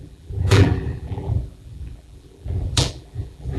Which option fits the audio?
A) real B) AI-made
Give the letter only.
B